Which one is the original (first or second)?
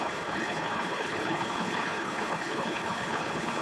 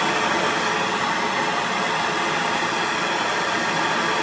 second